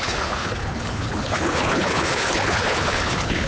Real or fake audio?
fake